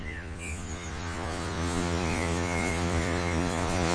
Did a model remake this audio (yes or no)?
yes